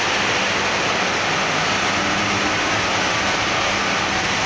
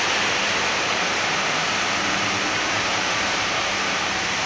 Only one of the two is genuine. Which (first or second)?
first